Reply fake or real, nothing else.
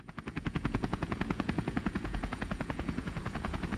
fake